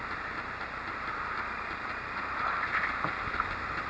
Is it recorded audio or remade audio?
recorded